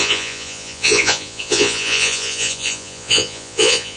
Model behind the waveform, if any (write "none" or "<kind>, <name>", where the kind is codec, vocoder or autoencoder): vocoder, Vocos